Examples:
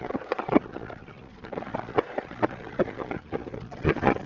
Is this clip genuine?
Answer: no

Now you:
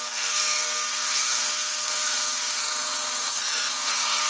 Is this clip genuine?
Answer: no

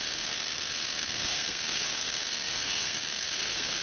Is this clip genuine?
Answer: no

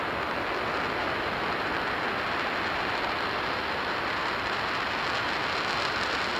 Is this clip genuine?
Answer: yes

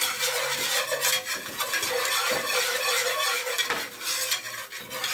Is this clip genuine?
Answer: yes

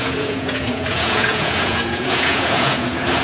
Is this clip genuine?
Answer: no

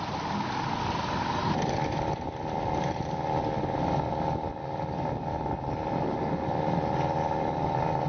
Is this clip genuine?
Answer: yes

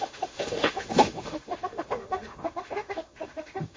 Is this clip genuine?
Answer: no